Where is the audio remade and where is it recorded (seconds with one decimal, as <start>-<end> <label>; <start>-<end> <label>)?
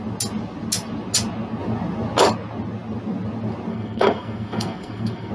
0.0-3.7 recorded; 3.7-5.3 remade